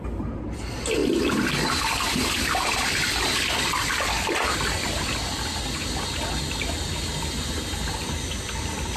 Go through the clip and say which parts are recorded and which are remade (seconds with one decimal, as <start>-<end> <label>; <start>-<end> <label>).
0.0-1.0 recorded; 1.0-3.9 remade; 3.9-9.0 recorded